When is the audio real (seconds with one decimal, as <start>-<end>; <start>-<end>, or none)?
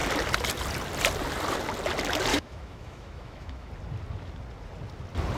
0.0-2.3; 3.7-5.4